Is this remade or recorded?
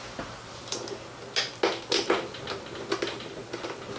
recorded